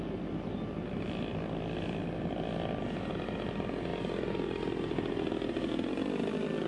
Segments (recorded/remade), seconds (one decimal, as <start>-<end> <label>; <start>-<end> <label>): 0.0-6.7 recorded